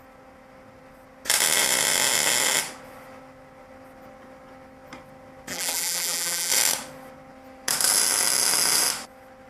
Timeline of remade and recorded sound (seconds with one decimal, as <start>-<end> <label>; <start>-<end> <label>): 0.0-5.5 recorded; 5.5-6.5 remade; 6.5-9.5 recorded